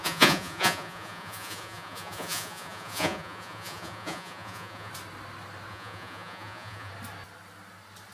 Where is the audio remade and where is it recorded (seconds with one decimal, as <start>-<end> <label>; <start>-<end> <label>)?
0.0-4.9 remade; 4.9-5.7 recorded; 5.7-6.9 remade; 6.9-8.1 recorded